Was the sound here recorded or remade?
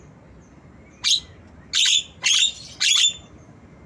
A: recorded